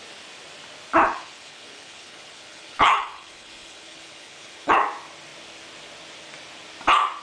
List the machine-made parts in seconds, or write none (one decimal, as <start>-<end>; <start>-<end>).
1.0-4.8